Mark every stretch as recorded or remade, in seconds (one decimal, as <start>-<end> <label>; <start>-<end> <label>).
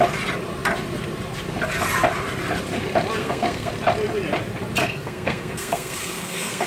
0.0-3.2 recorded; 3.2-3.7 remade; 3.7-4.8 recorded; 4.8-6.7 remade